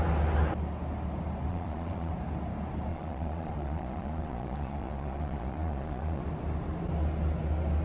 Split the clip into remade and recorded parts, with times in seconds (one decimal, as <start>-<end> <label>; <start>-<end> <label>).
0.0-1.5 recorded; 1.5-2.1 remade; 2.1-2.9 recorded; 2.9-6.2 remade; 6.2-7.8 recorded